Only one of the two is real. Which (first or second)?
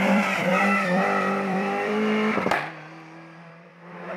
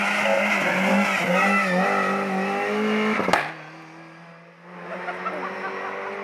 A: second